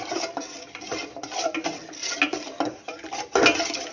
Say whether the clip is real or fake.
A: real